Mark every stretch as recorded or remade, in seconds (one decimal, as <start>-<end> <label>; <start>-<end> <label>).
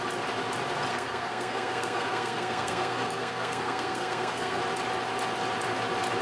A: 0.0-0.9 recorded; 0.9-4.6 remade; 4.6-6.2 recorded